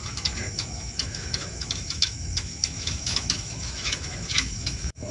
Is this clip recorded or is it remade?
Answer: remade